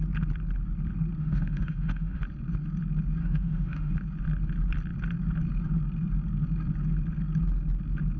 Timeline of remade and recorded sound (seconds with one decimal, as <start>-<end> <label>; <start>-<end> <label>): 0.0-1.2 recorded; 1.2-2.2 remade; 2.2-3.2 recorded; 3.2-3.9 remade; 3.9-8.2 recorded